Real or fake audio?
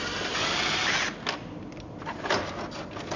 real